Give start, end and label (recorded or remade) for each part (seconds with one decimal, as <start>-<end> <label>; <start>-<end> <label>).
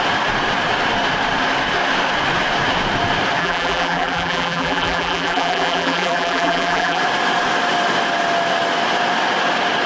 0.0-3.4 recorded; 3.4-7.0 remade; 7.0-9.9 recorded